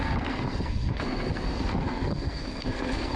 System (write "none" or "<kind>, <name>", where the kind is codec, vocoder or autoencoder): codec, SNAC